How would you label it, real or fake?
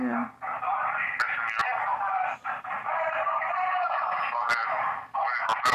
real